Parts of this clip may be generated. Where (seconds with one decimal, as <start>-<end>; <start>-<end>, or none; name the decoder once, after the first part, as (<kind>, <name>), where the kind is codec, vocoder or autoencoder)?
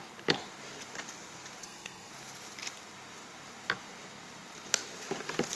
1.6-2.1 (codec, SNAC)